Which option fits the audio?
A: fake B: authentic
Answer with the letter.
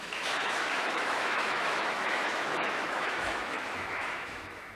A